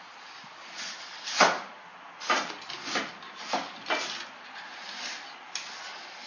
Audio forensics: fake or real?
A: real